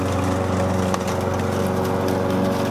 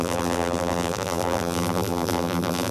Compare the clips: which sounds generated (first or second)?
second